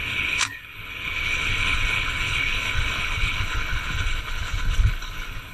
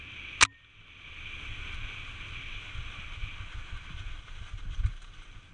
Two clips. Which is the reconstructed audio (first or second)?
first